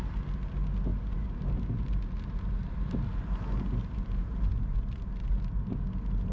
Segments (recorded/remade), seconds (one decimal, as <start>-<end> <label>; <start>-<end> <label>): 0.0-3.9 recorded; 3.9-4.5 remade; 4.5-6.3 recorded

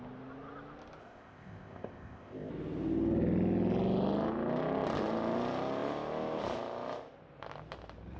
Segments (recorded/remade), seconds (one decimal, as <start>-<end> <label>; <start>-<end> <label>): 0.0-1.0 recorded; 1.0-2.5 remade; 2.5-8.2 recorded

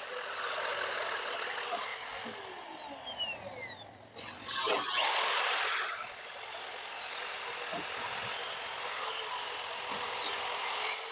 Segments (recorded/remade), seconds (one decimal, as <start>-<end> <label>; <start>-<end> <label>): 0.0-11.1 recorded

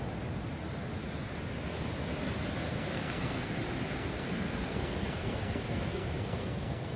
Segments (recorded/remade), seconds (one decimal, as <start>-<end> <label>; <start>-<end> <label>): 0.0-2.7 recorded; 2.7-3.5 remade; 3.5-3.9 recorded; 3.9-7.0 remade